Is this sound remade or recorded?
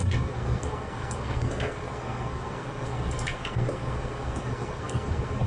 remade